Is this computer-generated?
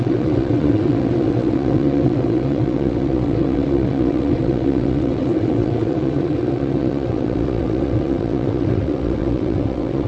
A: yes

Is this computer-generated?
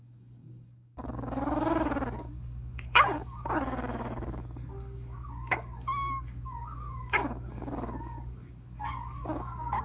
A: yes